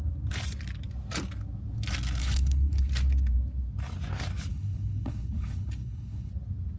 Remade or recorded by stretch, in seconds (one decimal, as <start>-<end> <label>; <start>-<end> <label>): 0.0-2.2 recorded; 2.2-2.9 remade; 2.9-4.5 recorded; 4.5-6.3 remade; 6.3-6.8 recorded